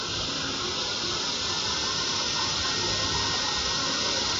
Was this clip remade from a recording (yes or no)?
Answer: no